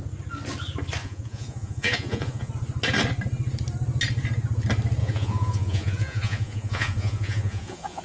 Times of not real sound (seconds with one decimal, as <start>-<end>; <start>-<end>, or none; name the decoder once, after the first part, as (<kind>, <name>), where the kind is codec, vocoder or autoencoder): 1.0-2.5 (vocoder, Vocos); 5.0-8.0